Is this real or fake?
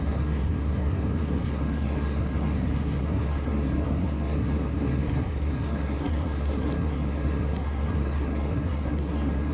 fake